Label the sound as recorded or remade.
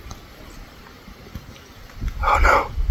recorded